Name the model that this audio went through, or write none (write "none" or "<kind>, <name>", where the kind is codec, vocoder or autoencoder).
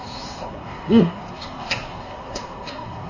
codec, SNAC